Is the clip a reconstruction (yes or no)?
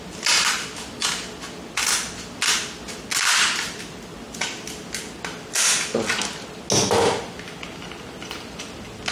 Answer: no